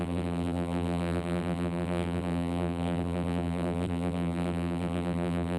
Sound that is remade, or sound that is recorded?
remade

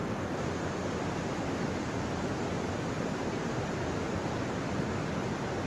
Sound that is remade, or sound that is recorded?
recorded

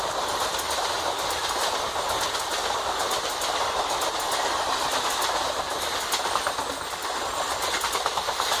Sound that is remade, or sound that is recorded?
recorded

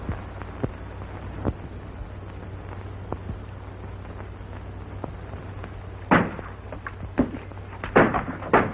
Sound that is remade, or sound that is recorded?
recorded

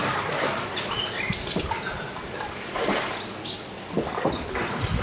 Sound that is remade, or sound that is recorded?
recorded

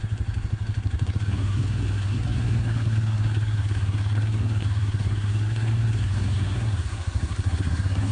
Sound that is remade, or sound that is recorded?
remade